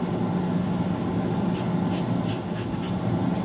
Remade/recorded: recorded